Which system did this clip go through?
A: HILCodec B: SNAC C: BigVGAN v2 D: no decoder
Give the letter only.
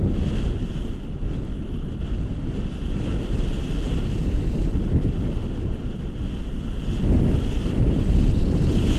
D